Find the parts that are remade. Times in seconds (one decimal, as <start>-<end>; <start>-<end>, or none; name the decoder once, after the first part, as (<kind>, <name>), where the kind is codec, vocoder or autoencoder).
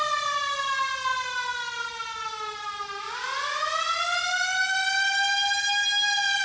none